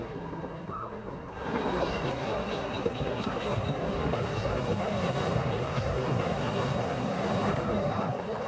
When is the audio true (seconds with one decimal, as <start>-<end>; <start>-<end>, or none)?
none